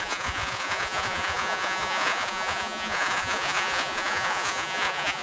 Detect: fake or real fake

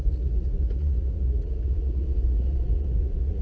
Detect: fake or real fake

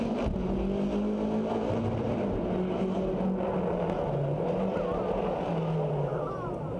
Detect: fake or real real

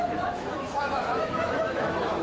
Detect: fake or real fake